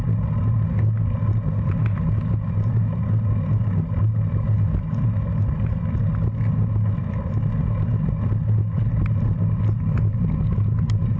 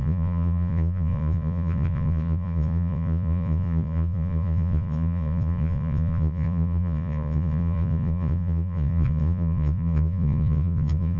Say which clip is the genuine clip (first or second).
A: first